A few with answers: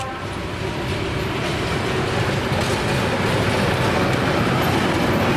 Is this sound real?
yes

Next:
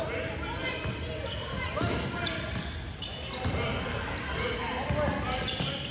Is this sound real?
yes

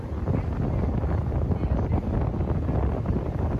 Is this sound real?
yes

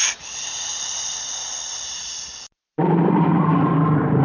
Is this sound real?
yes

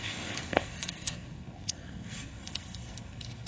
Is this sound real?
no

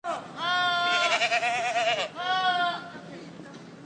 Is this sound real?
yes